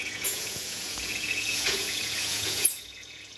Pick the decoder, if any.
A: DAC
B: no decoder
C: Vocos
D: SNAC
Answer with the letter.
C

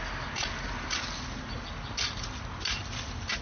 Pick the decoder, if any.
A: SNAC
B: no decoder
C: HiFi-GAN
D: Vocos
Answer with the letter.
B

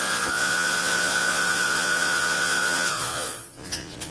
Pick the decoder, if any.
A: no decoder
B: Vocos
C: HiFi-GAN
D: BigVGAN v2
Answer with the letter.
B